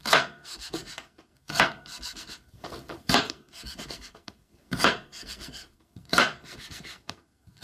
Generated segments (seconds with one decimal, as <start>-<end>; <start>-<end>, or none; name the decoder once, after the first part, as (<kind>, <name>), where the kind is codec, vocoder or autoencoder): 0.0-7.6 (codec, SNAC)